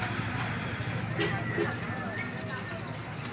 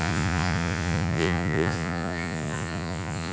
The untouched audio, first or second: first